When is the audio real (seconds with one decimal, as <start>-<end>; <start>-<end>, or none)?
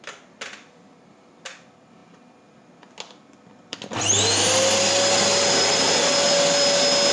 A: 0.0-7.1